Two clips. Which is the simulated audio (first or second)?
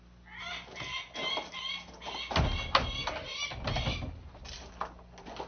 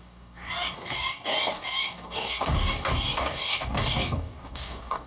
second